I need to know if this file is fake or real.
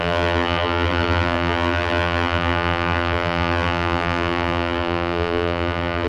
fake